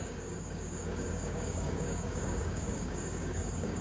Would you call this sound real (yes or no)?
no